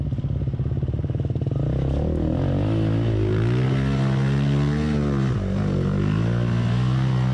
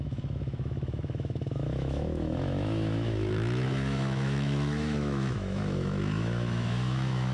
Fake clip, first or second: second